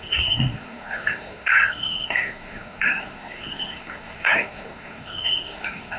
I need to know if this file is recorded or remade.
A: remade